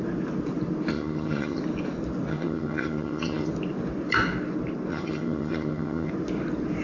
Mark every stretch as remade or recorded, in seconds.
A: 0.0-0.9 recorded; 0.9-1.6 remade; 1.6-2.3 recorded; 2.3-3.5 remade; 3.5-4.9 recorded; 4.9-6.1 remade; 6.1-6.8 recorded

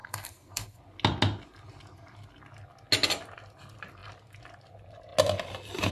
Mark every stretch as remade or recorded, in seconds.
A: 0.0-0.8 remade; 0.8-5.9 recorded

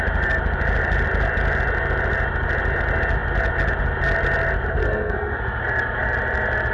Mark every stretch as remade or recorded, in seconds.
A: 0.0-4.8 recorded; 4.8-5.4 remade; 5.4-6.7 recorded

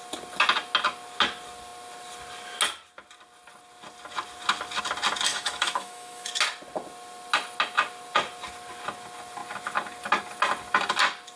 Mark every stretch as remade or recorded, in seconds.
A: 0.0-5.3 recorded; 5.3-6.3 remade; 6.3-11.4 recorded

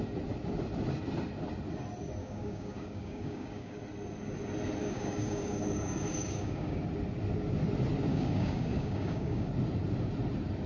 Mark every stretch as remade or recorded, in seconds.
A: 0.0-2.2 recorded; 2.2-3.8 remade; 3.8-4.8 recorded; 4.8-6.8 remade; 6.8-8.1 recorded; 8.1-9.5 remade; 9.5-10.7 recorded

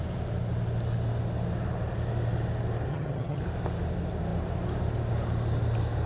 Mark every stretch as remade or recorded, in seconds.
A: 0.0-2.9 recorded; 2.9-3.4 remade; 3.4-6.1 recorded

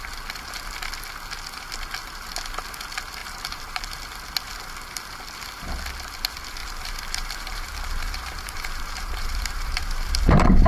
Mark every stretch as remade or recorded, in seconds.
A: 0.0-3.2 recorded; 3.2-4.0 remade; 4.0-6.6 recorded; 6.6-10.7 remade